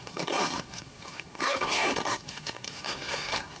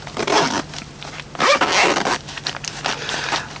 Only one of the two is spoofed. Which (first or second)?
first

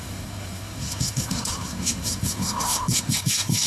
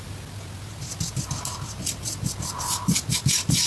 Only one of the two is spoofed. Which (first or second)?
first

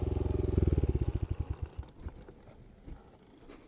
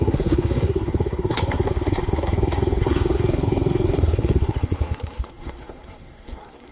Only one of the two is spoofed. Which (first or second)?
second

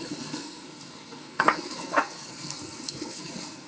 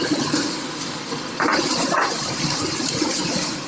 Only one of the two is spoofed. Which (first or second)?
first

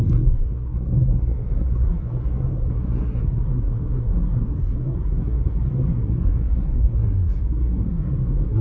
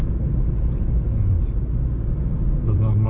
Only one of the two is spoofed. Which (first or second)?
first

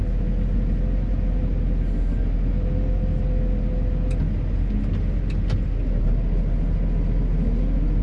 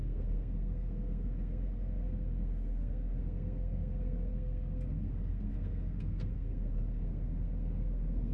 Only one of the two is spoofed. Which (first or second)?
second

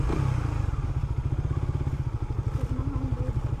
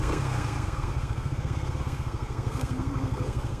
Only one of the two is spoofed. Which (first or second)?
second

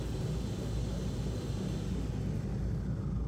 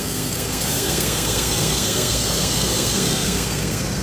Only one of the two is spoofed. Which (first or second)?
second